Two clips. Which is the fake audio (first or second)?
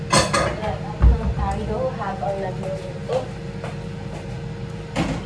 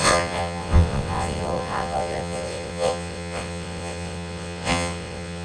second